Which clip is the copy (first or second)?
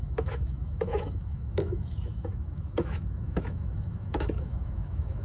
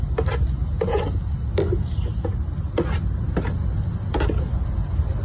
first